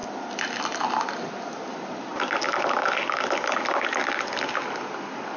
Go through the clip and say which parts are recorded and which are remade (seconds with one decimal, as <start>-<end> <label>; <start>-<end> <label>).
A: 0.0-5.4 recorded